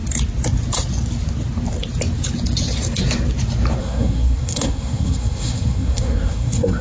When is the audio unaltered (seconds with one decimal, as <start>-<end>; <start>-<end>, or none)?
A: 0.0-3.8